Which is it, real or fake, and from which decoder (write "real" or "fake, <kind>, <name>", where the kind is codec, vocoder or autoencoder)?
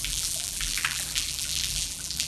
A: fake, vocoder, BigVGAN v2